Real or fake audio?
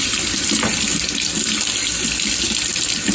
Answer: real